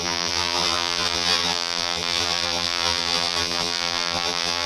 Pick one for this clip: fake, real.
fake